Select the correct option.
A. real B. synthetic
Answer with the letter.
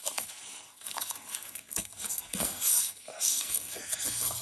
B